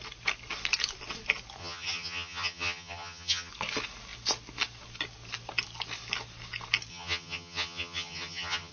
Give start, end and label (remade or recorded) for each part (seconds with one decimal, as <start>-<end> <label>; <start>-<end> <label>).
0.0-1.6 recorded; 1.6-3.5 remade; 3.5-6.9 recorded; 6.9-8.7 remade